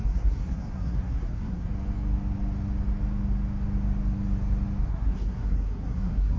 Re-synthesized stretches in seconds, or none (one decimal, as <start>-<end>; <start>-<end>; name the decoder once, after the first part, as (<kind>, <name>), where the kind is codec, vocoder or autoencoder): 0.0-1.7 (codec, SNAC); 4.9-6.4